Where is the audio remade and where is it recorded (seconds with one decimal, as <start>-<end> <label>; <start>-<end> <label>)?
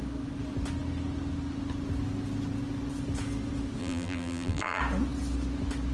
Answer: 0.0-3.8 recorded; 3.8-4.8 remade; 4.8-5.9 recorded